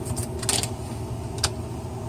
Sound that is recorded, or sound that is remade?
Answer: recorded